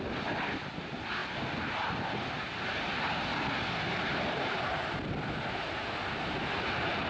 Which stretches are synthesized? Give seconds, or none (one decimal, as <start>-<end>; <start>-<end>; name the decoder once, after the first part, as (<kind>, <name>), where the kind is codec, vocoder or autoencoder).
none